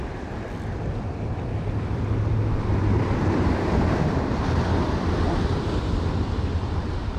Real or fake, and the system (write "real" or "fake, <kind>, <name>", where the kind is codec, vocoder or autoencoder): fake, vocoder, BigVGAN v2